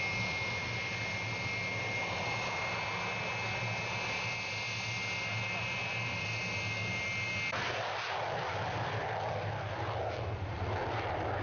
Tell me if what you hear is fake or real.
real